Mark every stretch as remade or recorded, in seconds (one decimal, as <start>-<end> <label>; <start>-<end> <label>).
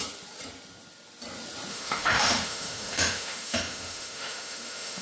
0.0-1.7 recorded; 1.7-5.0 remade